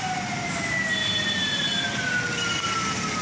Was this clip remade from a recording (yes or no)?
no